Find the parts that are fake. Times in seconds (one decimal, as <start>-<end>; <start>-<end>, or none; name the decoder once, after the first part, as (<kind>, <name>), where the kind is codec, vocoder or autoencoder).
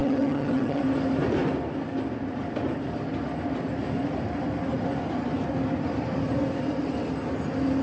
0.0-0.8 (vocoder, HiFi-GAN)